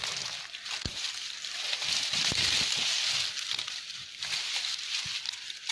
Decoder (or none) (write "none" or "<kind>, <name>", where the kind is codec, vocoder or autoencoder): none